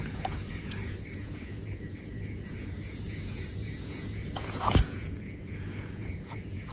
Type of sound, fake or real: fake